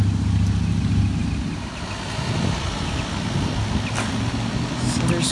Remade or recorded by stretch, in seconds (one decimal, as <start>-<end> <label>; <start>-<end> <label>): 0.0-5.3 recorded